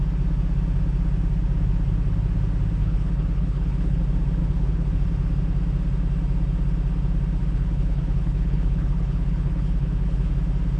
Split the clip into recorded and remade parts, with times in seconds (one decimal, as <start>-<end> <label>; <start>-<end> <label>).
0.0-2.8 recorded; 2.8-4.0 remade; 4.0-4.4 recorded; 4.4-4.9 remade; 4.9-7.4 recorded; 7.4-10.3 remade; 10.3-10.8 recorded